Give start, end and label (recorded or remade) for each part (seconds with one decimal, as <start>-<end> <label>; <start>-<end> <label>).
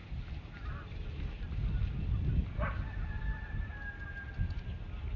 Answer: 0.0-5.2 recorded